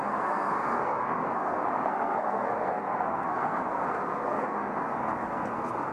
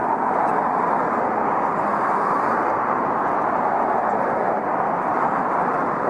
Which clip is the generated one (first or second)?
first